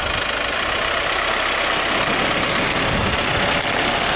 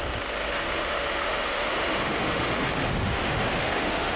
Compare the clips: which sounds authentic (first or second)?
first